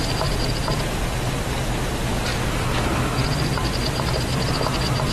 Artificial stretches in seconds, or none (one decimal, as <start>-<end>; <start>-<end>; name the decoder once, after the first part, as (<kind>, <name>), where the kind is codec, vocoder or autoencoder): none